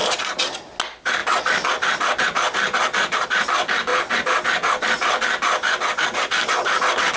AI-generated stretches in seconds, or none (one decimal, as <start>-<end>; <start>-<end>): none